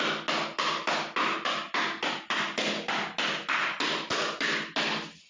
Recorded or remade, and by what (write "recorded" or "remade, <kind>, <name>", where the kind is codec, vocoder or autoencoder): recorded